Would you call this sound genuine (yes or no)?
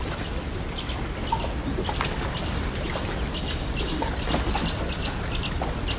yes